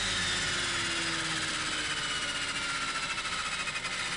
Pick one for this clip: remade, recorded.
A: recorded